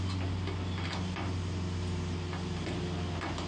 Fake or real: real